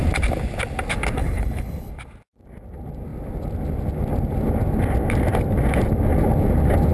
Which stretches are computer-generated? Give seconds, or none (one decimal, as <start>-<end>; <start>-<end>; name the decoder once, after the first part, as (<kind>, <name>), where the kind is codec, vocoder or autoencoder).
1.2-1.9 (codec, HILCodec)